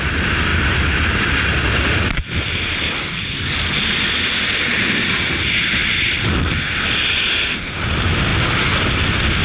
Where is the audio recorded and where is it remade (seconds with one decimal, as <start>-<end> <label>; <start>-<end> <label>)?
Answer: 0.0-7.3 recorded; 7.3-7.8 remade; 7.8-9.4 recorded

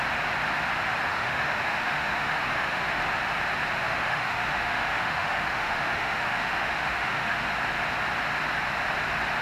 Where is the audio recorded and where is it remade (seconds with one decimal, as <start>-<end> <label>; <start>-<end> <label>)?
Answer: 0.0-1.1 recorded; 1.1-2.8 remade; 2.8-3.8 recorded; 3.8-7.5 remade; 7.5-9.4 recorded

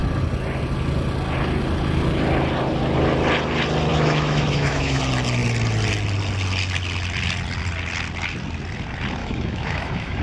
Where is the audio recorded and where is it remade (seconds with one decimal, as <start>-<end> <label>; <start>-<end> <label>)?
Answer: 0.0-3.9 recorded; 3.9-5.0 remade; 5.0-9.2 recorded; 9.2-10.2 remade

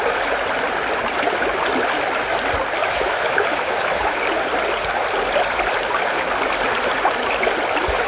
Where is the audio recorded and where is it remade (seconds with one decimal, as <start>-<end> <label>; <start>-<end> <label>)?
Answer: 0.0-2.8 recorded; 2.8-4.2 remade; 4.2-8.1 recorded

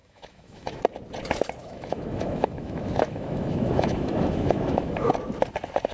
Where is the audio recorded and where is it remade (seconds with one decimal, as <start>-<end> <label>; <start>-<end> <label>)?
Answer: 0.0-0.8 remade; 0.8-1.6 recorded; 1.6-5.1 remade; 5.1-5.9 recorded

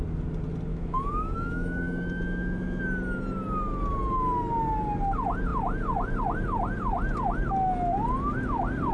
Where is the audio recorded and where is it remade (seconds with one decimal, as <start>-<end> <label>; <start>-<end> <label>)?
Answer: 0.0-0.7 recorded; 0.7-2.8 remade; 2.8-8.9 recorded

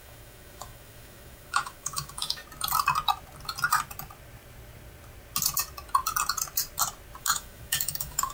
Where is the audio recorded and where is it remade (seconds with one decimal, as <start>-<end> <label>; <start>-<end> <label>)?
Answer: 0.0-2.4 remade; 2.4-7.2 recorded; 7.2-8.3 remade